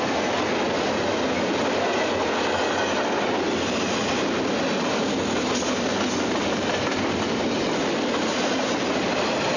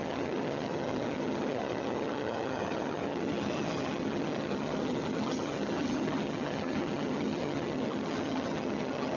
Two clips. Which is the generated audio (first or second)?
second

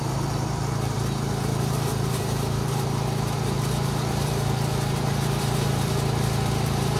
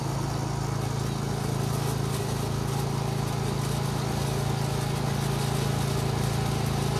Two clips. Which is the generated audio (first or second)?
first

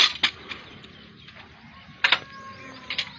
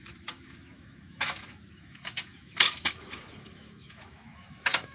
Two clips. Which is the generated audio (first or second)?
second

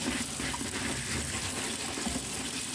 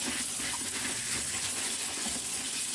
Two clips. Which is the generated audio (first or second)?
second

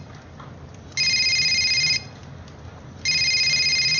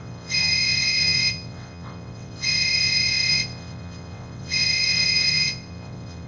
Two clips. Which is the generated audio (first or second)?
second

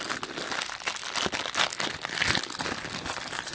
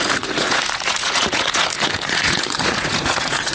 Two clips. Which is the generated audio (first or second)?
second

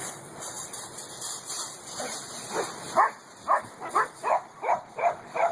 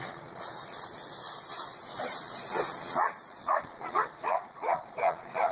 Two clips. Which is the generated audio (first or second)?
second